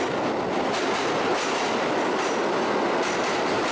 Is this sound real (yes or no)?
yes